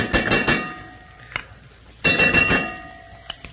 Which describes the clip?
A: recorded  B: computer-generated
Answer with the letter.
A